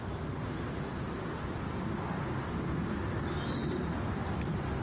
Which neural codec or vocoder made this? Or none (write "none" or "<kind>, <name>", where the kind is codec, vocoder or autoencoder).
none